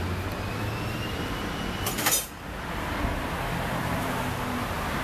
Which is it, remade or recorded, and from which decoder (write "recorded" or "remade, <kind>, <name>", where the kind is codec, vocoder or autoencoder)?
recorded